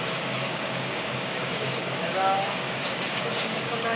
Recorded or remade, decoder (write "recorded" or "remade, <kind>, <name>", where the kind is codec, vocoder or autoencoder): remade, codec, DAC